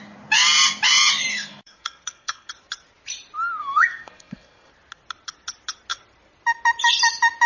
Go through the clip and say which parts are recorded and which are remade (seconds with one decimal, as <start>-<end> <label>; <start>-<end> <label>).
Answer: 0.0-1.3 recorded; 1.3-2.5 remade; 2.5-3.6 recorded; 3.6-4.7 remade; 4.7-7.5 recorded